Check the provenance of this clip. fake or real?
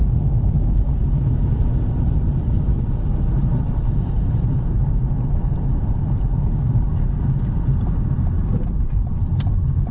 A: fake